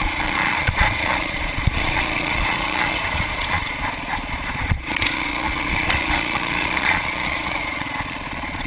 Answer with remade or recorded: remade